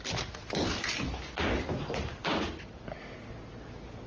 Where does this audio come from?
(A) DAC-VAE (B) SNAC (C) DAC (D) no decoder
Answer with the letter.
D